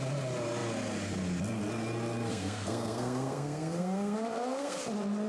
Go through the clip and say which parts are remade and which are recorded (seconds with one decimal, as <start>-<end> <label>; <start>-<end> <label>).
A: 0.0-2.3 recorded; 2.3-4.8 remade; 4.8-5.3 recorded